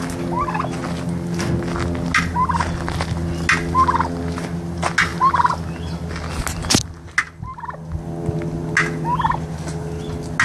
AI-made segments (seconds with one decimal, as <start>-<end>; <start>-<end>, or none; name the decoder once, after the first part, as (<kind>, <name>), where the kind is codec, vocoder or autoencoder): none